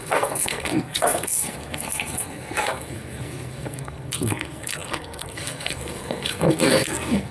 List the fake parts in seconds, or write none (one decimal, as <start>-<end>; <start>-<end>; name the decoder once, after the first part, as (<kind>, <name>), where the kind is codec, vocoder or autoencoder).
0.0-7.3 (codec, SNAC)